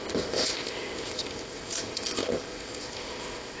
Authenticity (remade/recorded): remade